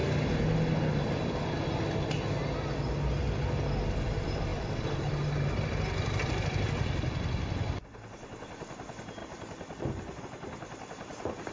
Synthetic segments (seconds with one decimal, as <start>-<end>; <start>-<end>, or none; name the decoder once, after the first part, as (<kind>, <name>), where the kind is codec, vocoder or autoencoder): 4.5-5.5 (vocoder, BigVGAN v2)